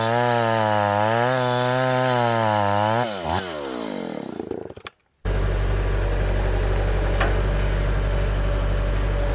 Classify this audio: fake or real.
real